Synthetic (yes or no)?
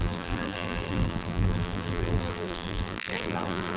yes